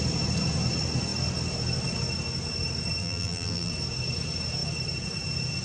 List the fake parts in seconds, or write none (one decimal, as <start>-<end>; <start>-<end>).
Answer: 3.0-3.7

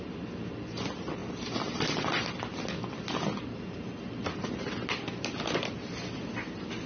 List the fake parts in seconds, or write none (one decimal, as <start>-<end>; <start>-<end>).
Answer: none